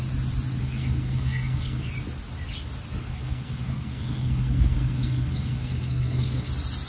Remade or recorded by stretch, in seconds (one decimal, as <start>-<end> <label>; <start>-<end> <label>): 0.0-0.6 recorded; 0.6-1.9 remade; 1.9-3.0 recorded; 3.0-6.5 remade; 6.5-6.9 recorded